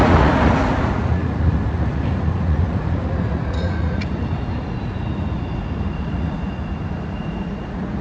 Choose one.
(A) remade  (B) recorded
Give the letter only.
A